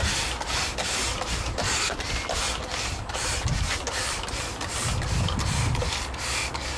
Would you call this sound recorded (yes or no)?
yes